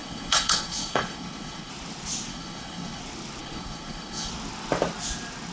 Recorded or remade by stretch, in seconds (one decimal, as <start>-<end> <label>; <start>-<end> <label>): 0.0-1.7 remade; 1.7-2.3 recorded; 2.3-3.0 remade; 3.0-3.4 recorded; 3.4-4.3 remade; 4.3-5.5 recorded

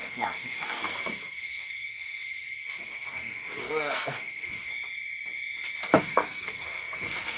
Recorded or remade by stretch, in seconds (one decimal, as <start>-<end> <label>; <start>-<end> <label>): 0.0-4.7 remade; 4.7-6.0 recorded; 6.0-7.4 remade

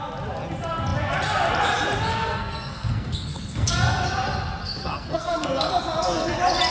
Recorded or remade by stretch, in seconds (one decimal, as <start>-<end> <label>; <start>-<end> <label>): 0.0-2.1 recorded; 2.1-3.7 remade; 3.7-4.6 recorded; 4.6-5.7 remade; 5.7-6.7 recorded

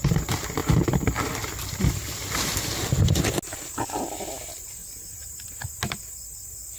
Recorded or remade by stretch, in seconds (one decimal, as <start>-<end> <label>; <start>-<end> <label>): 0.0-6.8 recorded